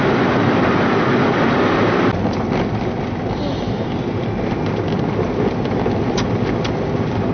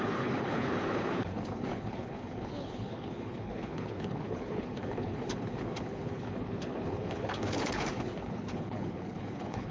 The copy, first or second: second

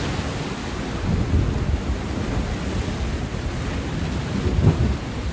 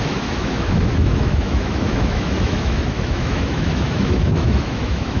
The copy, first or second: second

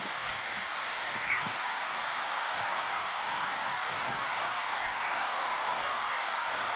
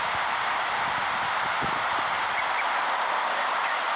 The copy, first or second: first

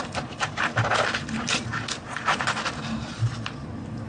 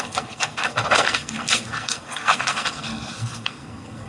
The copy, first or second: second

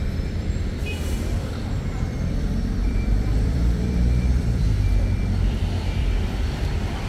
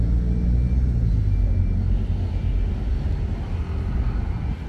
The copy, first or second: first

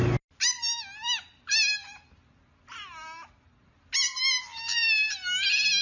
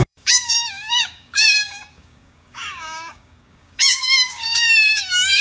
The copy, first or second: second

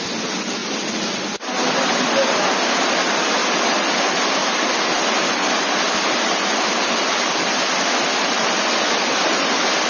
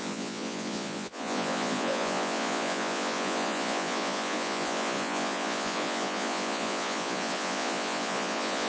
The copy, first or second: second